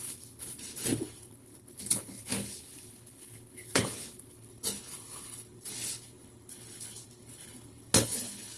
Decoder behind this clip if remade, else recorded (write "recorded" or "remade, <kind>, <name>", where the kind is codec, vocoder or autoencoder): remade, codec, HILCodec